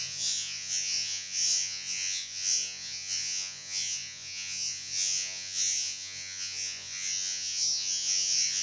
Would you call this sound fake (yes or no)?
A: yes